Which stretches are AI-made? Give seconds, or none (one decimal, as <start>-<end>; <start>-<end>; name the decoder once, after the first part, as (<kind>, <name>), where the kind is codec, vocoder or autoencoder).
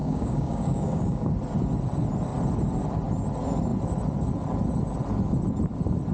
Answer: 0.0-1.3 (codec, DAC)